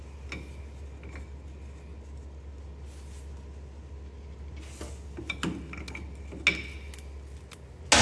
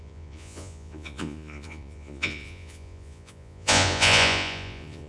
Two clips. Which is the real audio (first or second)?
first